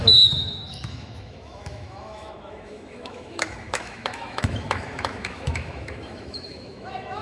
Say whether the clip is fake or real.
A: fake